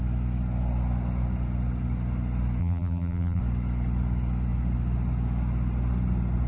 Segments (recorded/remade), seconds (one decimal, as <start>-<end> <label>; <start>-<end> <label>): 0.0-2.6 recorded; 2.6-3.4 remade; 3.4-6.5 recorded